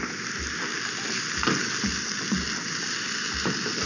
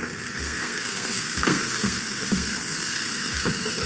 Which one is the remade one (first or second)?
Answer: second